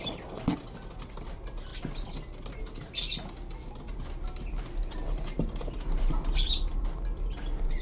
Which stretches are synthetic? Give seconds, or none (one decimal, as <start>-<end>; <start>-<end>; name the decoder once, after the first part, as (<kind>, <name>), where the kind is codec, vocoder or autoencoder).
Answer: none